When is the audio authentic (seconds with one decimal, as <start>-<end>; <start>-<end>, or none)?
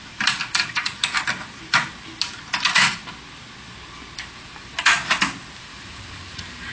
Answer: 1.0-4.3; 5.0-5.6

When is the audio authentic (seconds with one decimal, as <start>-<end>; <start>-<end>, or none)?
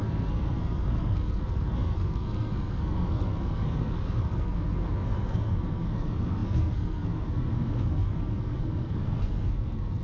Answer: none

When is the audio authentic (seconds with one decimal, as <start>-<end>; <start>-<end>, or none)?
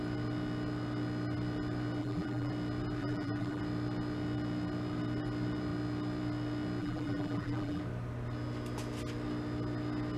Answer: 0.0-2.0; 2.5-3.0; 3.6-6.8; 7.8-10.2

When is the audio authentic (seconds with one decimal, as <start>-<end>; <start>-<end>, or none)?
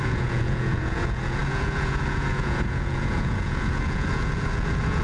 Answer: none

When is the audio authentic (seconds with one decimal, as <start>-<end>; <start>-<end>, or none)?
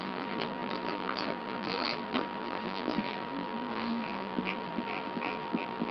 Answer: none